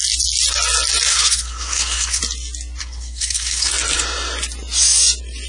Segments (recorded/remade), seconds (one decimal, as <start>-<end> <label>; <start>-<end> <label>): 0.0-1.1 recorded; 1.1-2.2 remade; 2.2-2.8 recorded; 2.8-3.7 remade; 3.7-5.5 recorded

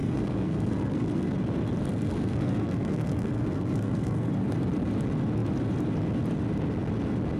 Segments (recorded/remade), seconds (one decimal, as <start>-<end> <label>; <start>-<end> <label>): 0.0-1.3 remade; 1.3-1.9 recorded; 1.9-4.3 remade; 4.3-7.4 recorded